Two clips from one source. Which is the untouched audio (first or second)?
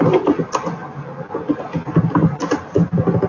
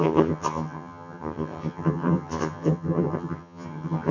first